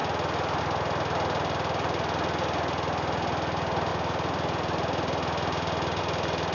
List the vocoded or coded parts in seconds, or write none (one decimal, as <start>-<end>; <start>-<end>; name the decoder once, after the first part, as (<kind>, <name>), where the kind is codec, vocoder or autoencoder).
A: none